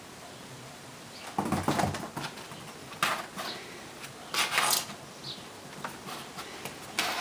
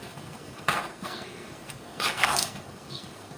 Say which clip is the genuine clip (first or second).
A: first